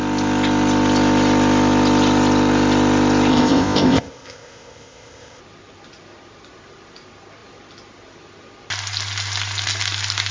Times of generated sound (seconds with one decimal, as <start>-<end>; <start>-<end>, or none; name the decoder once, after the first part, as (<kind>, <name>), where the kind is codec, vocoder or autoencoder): 3.3-5.4 (codec, ZipCodec)